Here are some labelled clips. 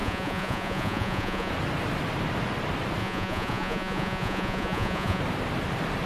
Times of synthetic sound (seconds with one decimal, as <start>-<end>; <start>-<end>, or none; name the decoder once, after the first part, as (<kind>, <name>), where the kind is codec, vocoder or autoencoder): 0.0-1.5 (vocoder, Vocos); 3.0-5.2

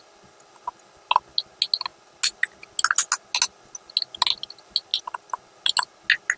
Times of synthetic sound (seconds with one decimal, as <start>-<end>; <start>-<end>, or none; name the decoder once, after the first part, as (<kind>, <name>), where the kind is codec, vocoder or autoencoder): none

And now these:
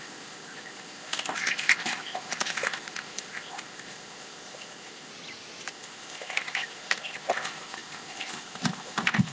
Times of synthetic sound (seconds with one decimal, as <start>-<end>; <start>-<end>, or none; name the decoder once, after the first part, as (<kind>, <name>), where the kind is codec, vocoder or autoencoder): 0.0-5.1 (codec, ZipCodec); 5.7-9.3